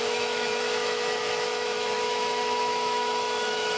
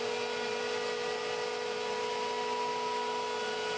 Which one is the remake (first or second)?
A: first